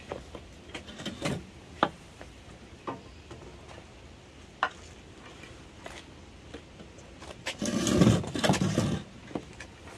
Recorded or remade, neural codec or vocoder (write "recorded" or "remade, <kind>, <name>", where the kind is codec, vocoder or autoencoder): recorded